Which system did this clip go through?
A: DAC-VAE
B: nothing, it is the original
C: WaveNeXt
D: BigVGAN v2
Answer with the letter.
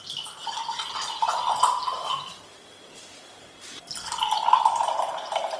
B